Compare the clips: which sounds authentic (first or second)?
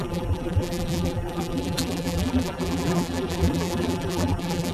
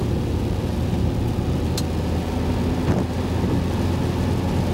second